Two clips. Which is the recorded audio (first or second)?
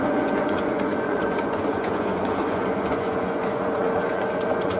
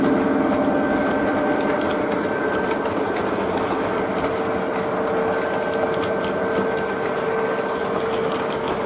second